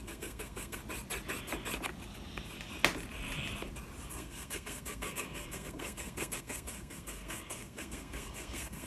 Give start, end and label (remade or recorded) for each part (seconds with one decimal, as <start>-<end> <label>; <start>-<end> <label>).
0.0-0.8 remade; 0.8-4.1 recorded; 4.1-8.9 remade